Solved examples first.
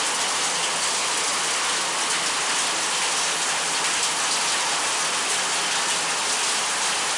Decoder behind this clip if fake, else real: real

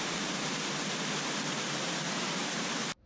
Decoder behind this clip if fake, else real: fake, vocoder, BigVGAN v2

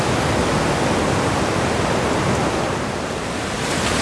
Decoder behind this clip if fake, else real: real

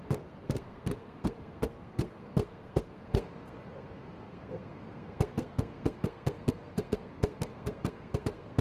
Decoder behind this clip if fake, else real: fake, codec, SNAC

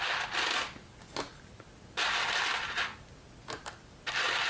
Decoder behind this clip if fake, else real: real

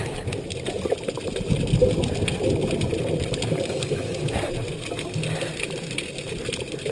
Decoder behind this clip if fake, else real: real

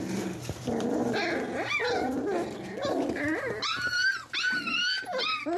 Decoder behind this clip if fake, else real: real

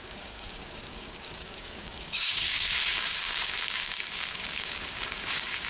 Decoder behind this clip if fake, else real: fake, codec, DAC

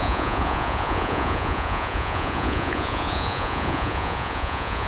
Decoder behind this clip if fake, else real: fake, vocoder, Vocos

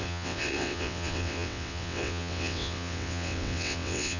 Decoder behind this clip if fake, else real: fake, vocoder, WaveNeXt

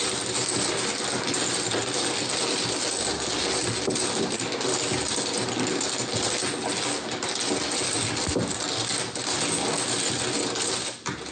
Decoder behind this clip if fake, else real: real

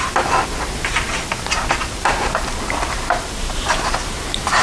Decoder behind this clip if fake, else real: real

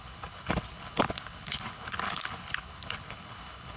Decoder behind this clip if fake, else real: fake, codec, HILCodec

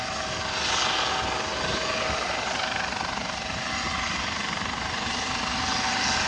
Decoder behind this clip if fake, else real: real